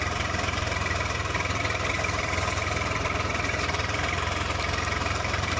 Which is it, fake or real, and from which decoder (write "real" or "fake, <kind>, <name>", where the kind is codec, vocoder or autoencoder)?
fake, vocoder, BigVGAN v2